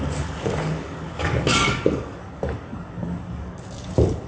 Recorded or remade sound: remade